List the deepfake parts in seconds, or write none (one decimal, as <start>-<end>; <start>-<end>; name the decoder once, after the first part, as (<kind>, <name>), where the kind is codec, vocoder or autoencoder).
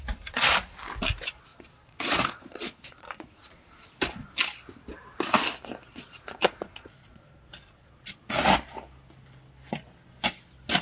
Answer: 1.5-4.0 (vocoder, Vocos); 5.9-8.3